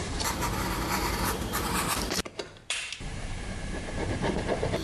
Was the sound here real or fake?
fake